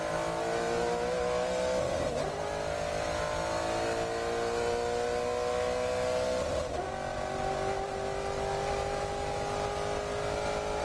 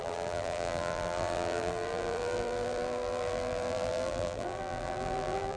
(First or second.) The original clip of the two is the first